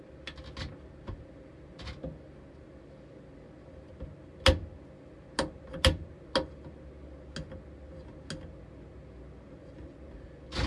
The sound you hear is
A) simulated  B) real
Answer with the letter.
B